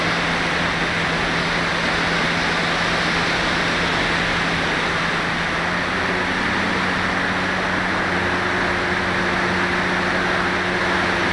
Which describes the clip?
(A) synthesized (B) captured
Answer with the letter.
B